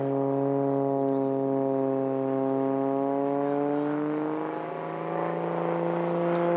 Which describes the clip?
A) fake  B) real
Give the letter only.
B